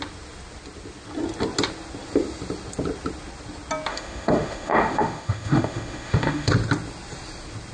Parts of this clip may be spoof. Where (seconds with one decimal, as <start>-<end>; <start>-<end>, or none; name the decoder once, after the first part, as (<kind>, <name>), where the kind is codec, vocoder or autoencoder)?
3.9-6.5 (autoencoder, DAC-VAE)